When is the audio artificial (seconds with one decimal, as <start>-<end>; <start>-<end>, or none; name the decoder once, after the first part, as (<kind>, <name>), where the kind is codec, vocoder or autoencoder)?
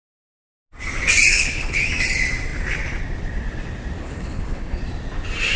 1.3-1.8 (codec, HILCodec); 4.0-4.8